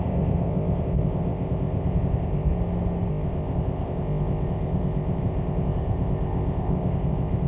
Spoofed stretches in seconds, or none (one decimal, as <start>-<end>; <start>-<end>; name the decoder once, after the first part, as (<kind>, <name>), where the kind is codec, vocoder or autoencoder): 0.0-2.5 (codec, ZipCodec); 3.1-7.5